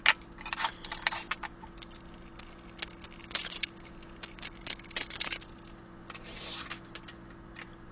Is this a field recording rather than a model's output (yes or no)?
yes